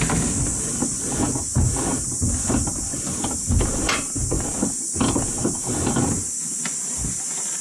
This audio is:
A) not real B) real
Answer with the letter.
B